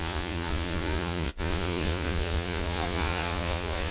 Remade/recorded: remade